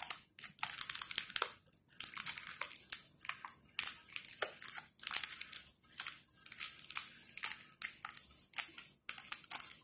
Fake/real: real